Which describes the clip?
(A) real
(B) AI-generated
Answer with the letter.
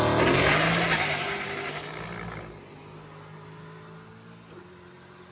A